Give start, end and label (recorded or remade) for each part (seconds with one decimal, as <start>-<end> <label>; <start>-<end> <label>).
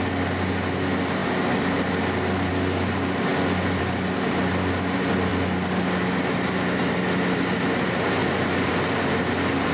0.0-9.7 recorded